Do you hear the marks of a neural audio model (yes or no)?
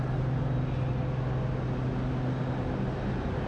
no